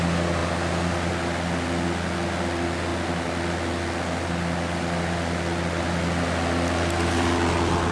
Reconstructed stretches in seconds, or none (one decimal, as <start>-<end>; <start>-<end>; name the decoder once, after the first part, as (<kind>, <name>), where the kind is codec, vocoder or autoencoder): none